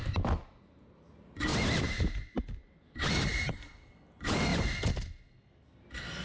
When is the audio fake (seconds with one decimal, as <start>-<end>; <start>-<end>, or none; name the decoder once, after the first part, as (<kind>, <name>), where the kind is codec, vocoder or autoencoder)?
1.5-3.1 (vocoder, BigVGAN v2); 4.5-5.5